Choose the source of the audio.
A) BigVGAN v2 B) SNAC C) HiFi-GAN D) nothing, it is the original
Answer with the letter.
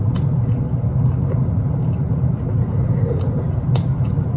D